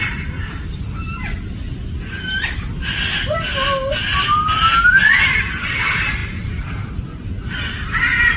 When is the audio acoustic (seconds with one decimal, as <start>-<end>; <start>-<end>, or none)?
0.0-8.4